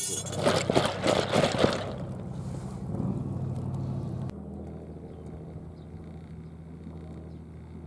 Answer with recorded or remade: recorded